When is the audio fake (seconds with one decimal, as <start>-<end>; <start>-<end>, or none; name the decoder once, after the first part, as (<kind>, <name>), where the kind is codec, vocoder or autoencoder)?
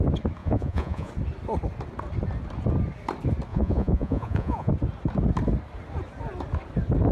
0.4-1.1 (vocoder, Vocos); 3.5-4.7